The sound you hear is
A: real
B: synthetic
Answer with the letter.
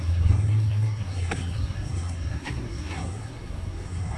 B